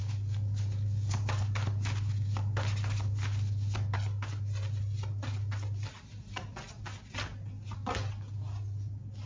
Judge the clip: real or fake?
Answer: real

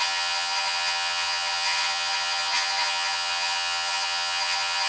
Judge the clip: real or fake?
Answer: fake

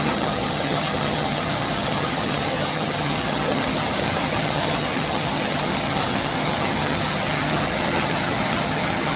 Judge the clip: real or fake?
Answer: fake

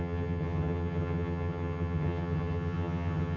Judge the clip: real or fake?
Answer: fake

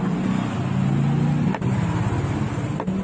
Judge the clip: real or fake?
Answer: real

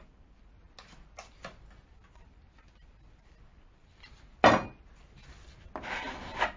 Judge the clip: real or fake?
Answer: real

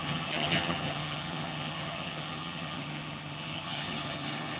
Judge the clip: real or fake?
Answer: fake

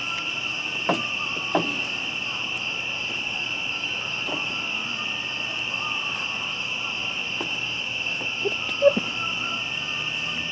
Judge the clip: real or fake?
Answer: real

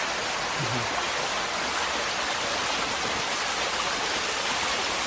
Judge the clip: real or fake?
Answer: real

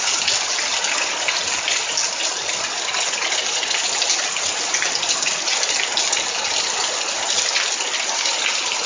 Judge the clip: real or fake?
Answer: real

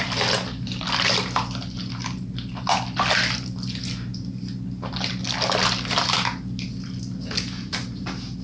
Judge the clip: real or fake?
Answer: real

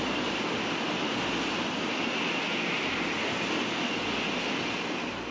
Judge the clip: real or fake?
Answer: real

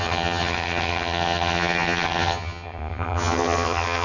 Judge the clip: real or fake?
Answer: fake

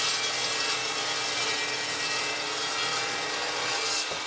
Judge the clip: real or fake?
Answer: real